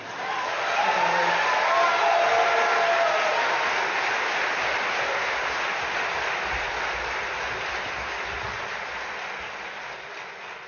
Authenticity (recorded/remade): recorded